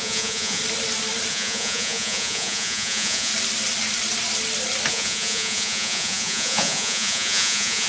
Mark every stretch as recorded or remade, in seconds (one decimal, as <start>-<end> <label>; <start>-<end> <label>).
0.0-0.6 remade; 0.6-1.3 recorded; 1.3-3.3 remade; 3.3-4.9 recorded; 4.9-7.9 remade